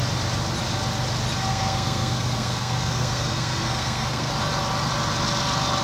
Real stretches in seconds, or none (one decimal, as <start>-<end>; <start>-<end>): 0.0-1.5; 4.3-5.8